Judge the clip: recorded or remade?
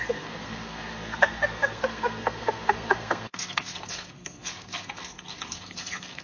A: remade